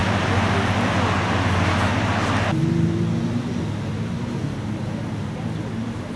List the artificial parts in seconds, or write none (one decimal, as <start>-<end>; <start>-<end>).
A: none